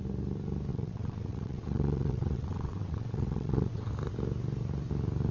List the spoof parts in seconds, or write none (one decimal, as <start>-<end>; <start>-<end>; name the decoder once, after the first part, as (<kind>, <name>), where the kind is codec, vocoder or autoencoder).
0.7-3.9 (vocoder, WaveNeXt)